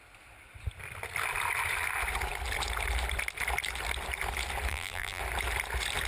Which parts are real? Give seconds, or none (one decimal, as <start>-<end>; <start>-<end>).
0.0-4.7; 5.2-6.1